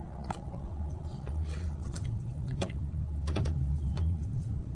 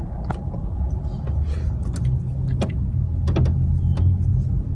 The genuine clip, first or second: second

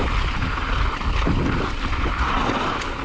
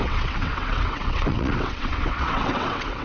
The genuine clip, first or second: first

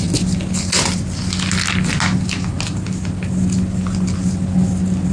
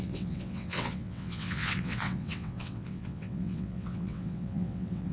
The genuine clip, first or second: first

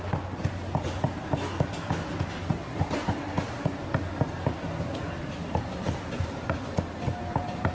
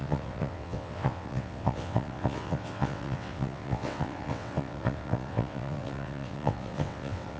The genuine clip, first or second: first